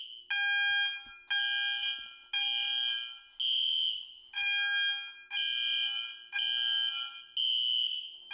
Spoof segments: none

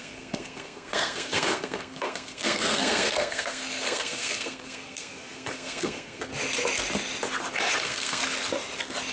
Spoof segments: 0.0-6.3 (codec, SNAC); 7.8-8.2